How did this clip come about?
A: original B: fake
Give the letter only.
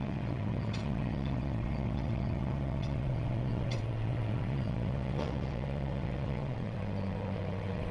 B